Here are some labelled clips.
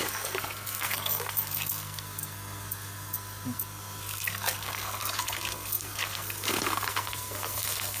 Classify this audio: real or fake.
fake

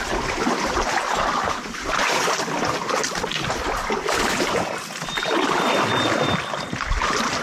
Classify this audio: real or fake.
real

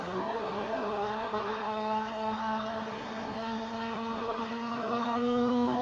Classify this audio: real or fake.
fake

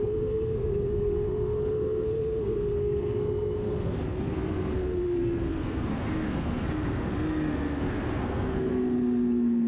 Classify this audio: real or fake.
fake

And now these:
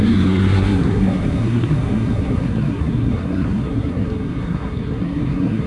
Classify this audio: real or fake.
fake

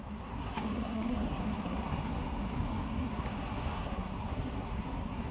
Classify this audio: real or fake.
fake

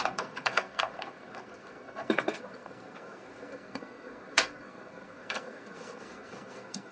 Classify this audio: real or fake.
fake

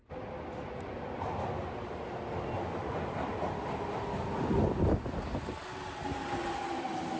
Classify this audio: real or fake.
real